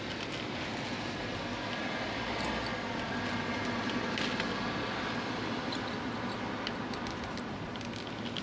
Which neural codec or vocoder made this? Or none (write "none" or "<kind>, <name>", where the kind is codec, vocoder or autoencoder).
none